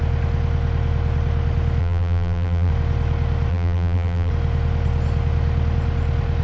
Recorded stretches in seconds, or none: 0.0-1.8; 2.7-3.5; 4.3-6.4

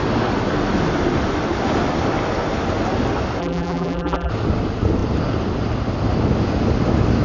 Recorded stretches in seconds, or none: 0.0-3.4; 4.3-7.2

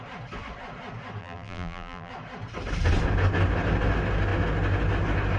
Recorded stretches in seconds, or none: 0.0-1.2; 2.1-5.4

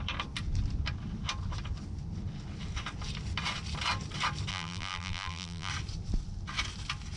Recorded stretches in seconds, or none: 0.0-4.5; 5.7-7.2

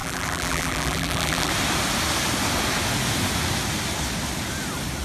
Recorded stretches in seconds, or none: 1.5-5.0

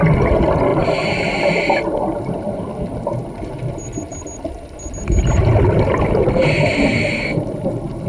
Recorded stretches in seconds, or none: 4.1-6.0; 6.4-6.9

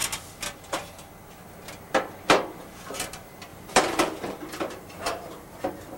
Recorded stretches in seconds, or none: 0.0-3.5

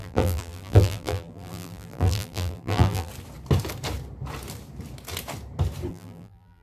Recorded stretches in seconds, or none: 3.1-5.9